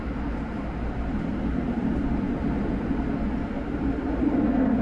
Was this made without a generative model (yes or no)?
yes